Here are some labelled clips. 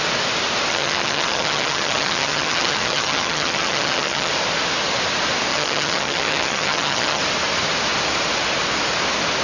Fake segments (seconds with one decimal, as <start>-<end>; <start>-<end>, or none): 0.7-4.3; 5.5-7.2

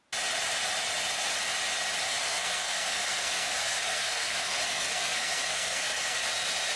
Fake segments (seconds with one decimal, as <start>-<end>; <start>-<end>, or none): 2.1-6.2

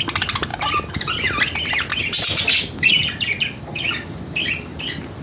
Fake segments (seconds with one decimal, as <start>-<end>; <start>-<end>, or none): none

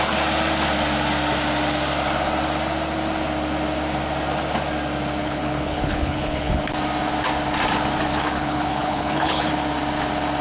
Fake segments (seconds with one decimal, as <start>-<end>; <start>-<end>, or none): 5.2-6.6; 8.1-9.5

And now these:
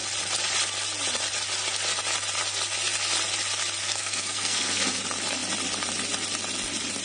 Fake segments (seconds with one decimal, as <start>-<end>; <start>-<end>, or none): 3.8-5.0

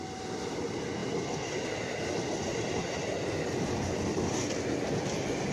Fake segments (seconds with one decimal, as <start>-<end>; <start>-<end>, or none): none

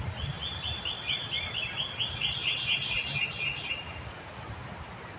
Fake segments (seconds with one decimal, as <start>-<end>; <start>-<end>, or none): none